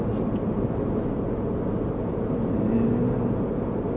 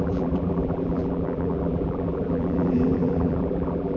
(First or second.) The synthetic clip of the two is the second